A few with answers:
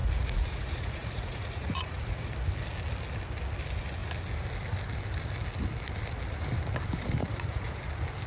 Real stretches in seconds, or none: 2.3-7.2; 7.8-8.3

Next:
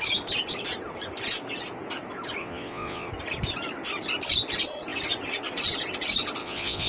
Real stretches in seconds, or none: 0.0-2.4; 3.1-6.4

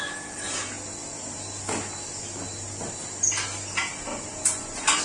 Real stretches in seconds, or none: 0.0-4.1

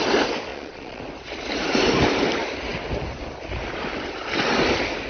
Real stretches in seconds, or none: 0.0-0.5; 1.0-5.1

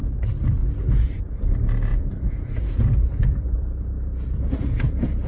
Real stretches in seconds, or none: 0.0-1.9